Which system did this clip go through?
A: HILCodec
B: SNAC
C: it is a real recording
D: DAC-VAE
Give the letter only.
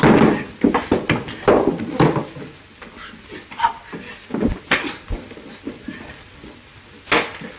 C